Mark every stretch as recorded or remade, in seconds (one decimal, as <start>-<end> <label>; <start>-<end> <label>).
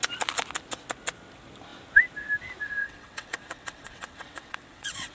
0.0-2.8 recorded; 2.8-5.1 remade